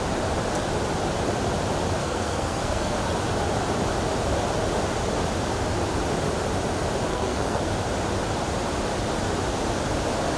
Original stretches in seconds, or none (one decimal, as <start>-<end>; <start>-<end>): 0.0-2.0; 3.0-7.1; 7.7-10.4